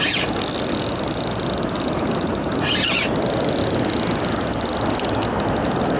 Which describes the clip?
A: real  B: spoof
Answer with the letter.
A